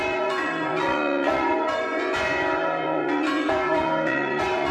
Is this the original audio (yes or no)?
no